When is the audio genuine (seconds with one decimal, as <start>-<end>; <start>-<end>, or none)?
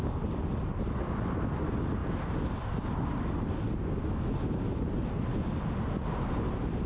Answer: 0.0-6.9